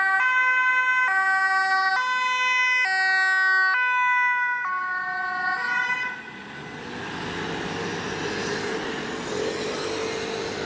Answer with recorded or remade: recorded